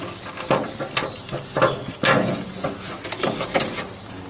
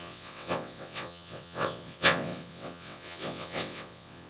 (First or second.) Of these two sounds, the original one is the first